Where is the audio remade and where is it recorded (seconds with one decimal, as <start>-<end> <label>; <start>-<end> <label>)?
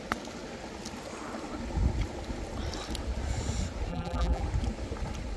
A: 0.0-3.9 recorded; 3.9-4.4 remade; 4.4-5.4 recorded